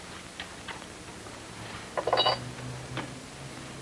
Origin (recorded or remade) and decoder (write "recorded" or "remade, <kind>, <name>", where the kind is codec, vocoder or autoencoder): recorded